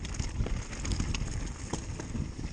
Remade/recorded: recorded